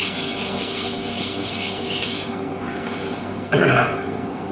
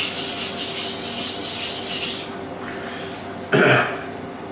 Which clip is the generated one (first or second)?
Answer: first